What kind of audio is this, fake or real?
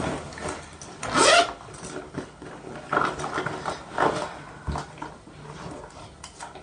real